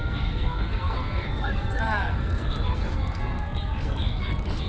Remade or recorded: remade